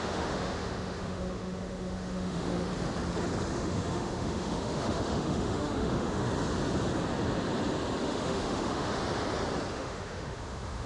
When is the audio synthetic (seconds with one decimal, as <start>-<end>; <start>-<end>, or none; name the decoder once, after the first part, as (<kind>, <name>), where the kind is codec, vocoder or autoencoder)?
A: 0.0-2.7 (autoencoder, DAC-VAE); 3.5-6.3; 8.0-9.0; 9.7-10.9